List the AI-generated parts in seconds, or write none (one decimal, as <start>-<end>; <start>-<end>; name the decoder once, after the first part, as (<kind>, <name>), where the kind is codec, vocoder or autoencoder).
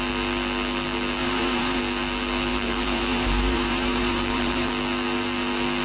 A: 1.2-1.8 (vocoder, BigVGAN v2); 2.5-4.7